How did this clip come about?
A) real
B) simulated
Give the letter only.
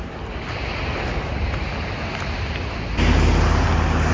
A